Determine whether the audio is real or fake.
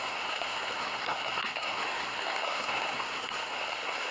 fake